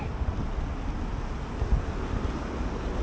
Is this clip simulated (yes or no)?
no